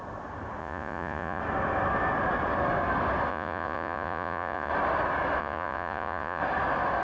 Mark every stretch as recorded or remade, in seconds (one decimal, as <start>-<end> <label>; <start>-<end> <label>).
0.0-0.6 recorded; 0.6-1.4 remade; 1.4-3.3 recorded; 3.3-4.7 remade; 4.7-5.4 recorded; 5.4-6.4 remade; 6.4-7.0 recorded